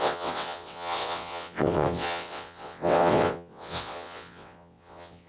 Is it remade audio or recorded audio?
remade